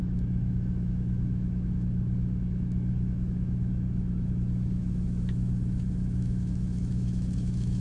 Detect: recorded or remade remade